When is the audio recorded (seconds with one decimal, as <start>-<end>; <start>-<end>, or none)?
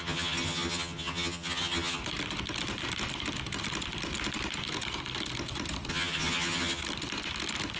2.0-5.9; 6.8-7.8